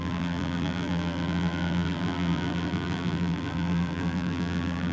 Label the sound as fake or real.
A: fake